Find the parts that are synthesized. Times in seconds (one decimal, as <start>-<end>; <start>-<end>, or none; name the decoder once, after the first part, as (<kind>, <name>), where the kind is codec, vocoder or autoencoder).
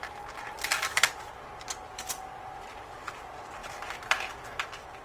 none